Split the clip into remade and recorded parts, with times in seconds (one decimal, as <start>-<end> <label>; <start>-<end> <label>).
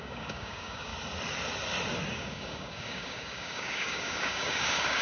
0.0-0.9 remade; 0.9-2.1 recorded; 2.1-5.0 remade